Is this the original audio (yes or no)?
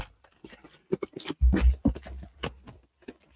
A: yes